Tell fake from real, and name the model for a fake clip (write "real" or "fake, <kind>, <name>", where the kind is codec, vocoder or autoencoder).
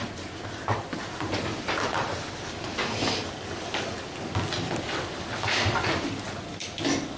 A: real